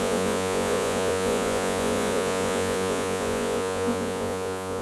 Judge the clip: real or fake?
fake